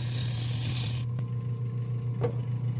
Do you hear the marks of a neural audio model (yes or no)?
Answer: no